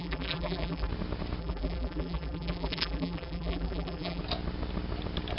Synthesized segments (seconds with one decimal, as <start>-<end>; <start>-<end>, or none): 0.0-0.9; 1.4-4.2